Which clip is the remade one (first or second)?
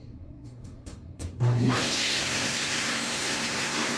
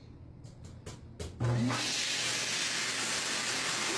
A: first